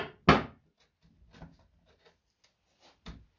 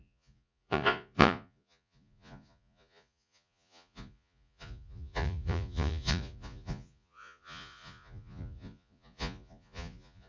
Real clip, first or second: first